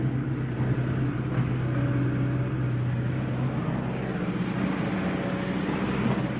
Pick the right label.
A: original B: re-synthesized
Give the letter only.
A